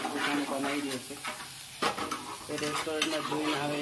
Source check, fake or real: real